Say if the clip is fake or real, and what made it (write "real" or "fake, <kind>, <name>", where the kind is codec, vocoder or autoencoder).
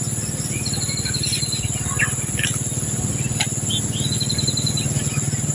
real